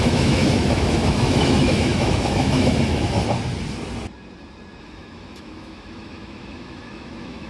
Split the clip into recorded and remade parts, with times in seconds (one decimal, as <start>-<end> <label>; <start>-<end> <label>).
0.0-3.2 remade; 3.2-4.8 recorded; 4.8-7.5 remade